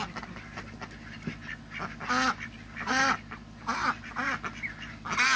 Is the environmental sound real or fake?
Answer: real